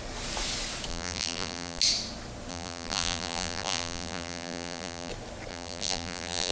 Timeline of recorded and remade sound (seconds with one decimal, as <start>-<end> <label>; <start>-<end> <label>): 0.0-0.9 recorded; 0.9-1.8 remade; 1.8-2.5 recorded; 2.5-5.1 remade; 5.1-5.5 recorded; 5.5-6.5 remade